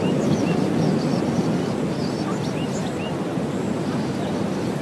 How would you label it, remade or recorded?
recorded